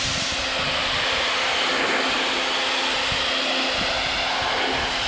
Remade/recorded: recorded